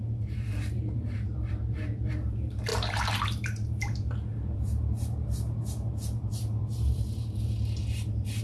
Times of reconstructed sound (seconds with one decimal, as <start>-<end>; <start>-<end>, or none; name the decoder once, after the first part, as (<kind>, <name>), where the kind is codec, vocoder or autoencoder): 0.0-8.4 (vocoder, BigVGAN v2)